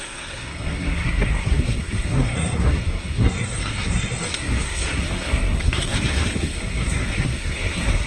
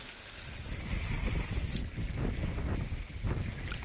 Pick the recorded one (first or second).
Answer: second